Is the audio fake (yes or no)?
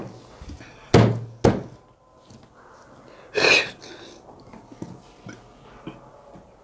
no